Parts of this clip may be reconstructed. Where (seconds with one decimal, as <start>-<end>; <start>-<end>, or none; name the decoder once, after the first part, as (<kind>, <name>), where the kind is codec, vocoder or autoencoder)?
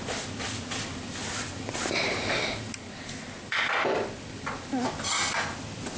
none